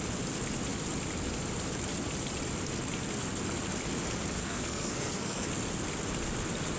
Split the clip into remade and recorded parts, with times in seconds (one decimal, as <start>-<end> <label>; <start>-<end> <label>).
0.0-4.4 recorded; 4.4-5.5 remade; 5.5-6.8 recorded